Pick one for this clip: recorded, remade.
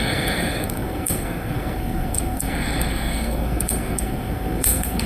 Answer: remade